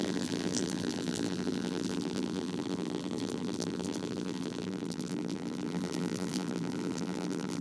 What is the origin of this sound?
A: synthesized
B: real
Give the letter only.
A